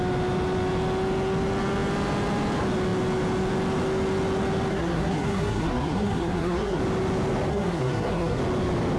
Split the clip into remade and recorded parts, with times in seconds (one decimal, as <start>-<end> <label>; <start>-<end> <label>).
0.0-4.7 recorded; 4.7-6.8 remade; 6.8-7.5 recorded; 7.5-8.4 remade; 8.4-9.0 recorded